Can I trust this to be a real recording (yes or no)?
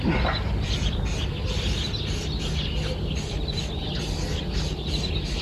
yes